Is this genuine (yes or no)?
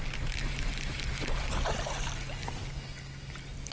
yes